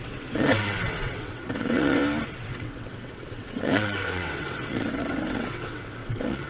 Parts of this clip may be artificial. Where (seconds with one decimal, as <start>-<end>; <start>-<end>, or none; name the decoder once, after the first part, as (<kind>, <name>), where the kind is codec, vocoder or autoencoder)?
0.0-2.0 (vocoder, WaveNeXt); 2.5-6.5